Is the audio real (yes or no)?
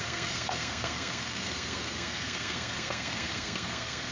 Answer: no